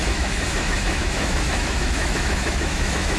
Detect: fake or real fake